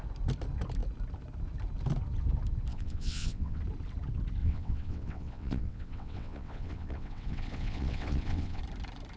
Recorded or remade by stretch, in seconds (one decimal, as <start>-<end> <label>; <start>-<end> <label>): 0.0-2.7 recorded; 2.7-3.6 remade; 3.6-4.4 recorded; 4.4-8.6 remade; 8.6-9.2 recorded